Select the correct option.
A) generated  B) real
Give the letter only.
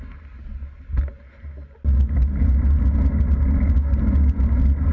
B